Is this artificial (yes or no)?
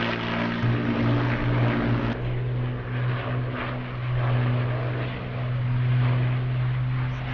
no